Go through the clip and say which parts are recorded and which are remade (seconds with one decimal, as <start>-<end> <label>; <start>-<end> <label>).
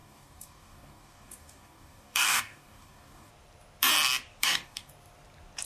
0.0-3.3 remade; 3.3-4.4 recorded; 4.4-4.9 remade; 4.9-5.6 recorded